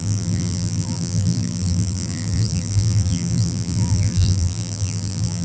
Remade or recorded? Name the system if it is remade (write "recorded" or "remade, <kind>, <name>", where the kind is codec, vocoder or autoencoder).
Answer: remade, vocoder, BigVGAN v2